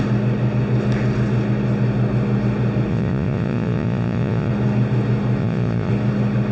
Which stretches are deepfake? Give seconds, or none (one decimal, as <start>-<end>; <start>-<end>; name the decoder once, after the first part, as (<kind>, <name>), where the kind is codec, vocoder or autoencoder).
2.9-4.5 (vocoder, Vocos); 5.4-5.9